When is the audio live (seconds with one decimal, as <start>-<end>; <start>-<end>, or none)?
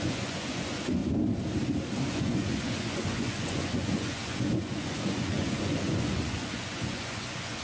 1.0-2.1